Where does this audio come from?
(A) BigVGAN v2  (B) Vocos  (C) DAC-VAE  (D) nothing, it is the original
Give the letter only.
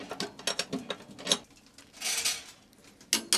D